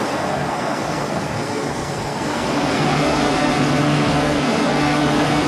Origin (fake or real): fake